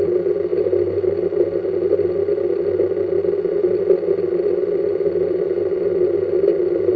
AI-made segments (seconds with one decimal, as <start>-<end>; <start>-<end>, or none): 0.0-0.5; 3.5-7.0